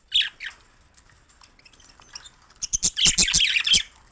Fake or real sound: real